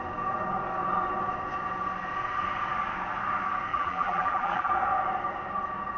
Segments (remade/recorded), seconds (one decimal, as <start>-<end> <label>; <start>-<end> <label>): 0.0-3.7 recorded; 3.7-4.7 remade; 4.7-6.0 recorded